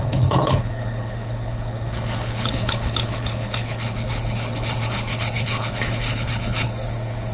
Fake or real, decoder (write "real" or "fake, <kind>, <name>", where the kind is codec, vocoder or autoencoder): fake, codec, HILCodec